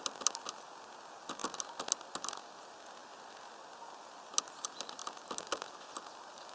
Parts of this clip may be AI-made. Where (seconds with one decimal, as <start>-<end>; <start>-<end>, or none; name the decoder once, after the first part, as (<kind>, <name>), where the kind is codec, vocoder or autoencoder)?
none